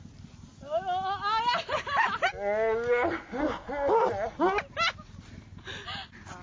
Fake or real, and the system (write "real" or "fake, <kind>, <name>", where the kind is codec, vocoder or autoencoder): real